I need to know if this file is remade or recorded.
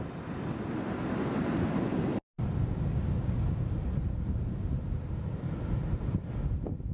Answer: recorded